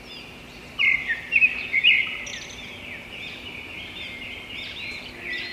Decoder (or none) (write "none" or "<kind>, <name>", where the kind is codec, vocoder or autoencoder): none